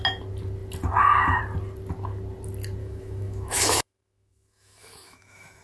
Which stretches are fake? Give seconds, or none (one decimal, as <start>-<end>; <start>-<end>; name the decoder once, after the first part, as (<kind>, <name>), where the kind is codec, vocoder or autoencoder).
2.8-5.6 (autoencoder, DAC-VAE)